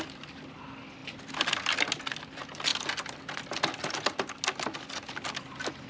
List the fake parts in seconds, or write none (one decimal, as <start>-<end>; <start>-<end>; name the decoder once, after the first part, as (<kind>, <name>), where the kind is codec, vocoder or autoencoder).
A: none